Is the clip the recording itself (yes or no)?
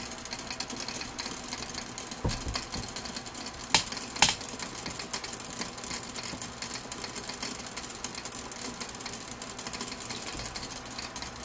yes